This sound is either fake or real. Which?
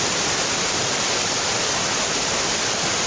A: real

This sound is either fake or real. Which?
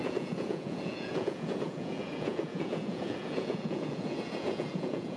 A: fake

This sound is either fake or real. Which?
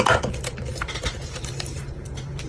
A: fake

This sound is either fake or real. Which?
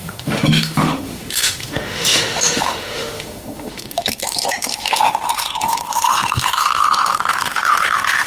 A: fake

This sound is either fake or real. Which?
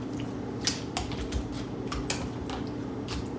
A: real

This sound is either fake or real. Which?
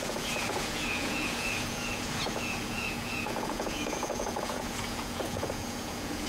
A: fake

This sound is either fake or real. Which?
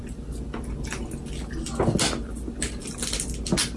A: real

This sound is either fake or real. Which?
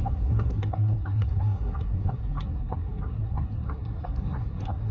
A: fake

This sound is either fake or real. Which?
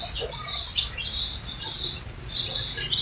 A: real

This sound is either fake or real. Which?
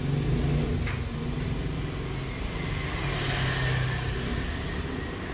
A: real